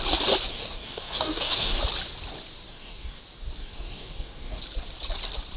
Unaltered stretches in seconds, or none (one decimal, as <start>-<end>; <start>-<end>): 0.0-0.5; 1.8-2.7; 3.2-3.6; 4.6-5.6